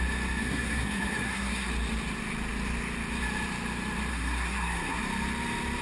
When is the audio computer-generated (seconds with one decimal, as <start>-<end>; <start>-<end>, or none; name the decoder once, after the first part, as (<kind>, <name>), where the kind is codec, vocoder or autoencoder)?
0.4-1.7 (codec, SNAC); 4.1-5.0